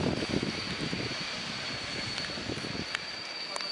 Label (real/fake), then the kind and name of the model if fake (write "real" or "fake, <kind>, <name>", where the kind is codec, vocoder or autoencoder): real